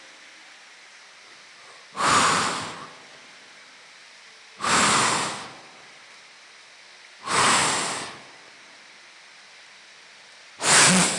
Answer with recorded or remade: recorded